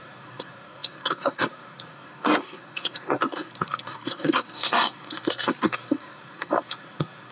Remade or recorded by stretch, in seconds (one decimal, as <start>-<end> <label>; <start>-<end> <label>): 0.0-7.3 remade